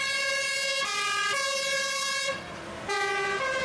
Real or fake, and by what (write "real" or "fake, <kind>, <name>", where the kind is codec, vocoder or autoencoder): real